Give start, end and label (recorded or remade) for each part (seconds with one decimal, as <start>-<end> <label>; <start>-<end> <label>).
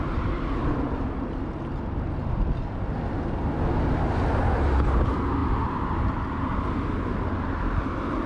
0.0-8.3 recorded